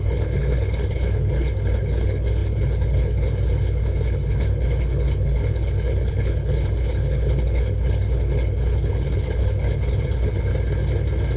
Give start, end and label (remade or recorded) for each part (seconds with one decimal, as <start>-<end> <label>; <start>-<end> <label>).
0.0-10.5 remade; 10.5-11.4 recorded